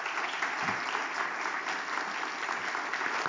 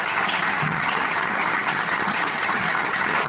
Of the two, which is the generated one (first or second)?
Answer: second